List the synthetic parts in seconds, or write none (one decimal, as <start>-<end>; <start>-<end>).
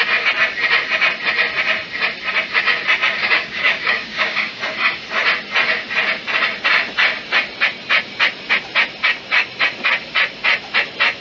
3.2-4.6